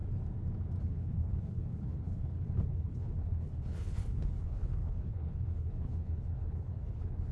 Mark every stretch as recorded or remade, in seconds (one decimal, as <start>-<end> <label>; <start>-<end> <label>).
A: 0.0-0.8 recorded; 0.8-7.3 remade